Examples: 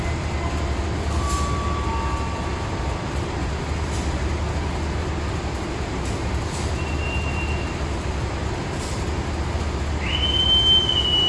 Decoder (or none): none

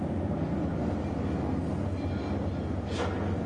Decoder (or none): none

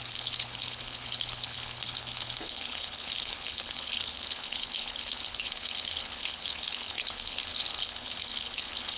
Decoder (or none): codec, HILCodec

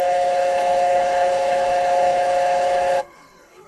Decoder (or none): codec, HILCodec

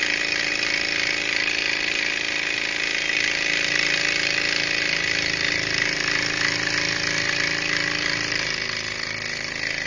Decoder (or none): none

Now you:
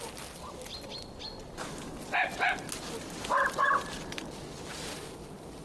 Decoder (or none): none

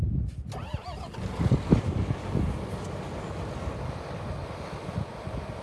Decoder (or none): none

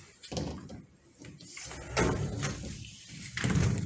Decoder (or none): none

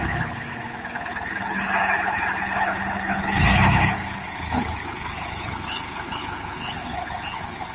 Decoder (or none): codec, HILCodec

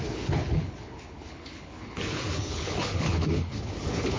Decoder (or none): codec, HILCodec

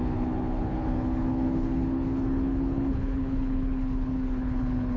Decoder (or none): codec, HILCodec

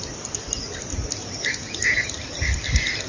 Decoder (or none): none